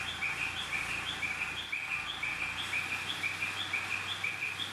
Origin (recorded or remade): recorded